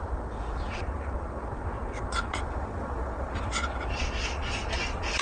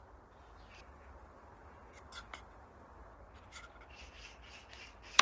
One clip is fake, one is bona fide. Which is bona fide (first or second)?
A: second